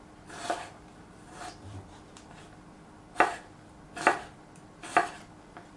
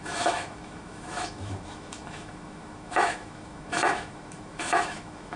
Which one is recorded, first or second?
first